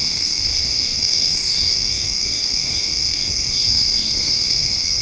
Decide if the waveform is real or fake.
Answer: fake